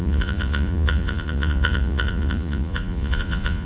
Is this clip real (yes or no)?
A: no